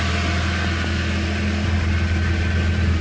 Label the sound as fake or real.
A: real